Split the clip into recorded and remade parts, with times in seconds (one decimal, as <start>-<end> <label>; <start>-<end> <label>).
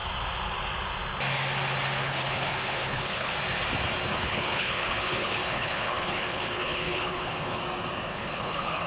0.0-2.0 recorded; 2.0-3.3 remade; 3.3-4.1 recorded; 4.1-7.6 remade; 7.6-8.1 recorded; 8.1-8.9 remade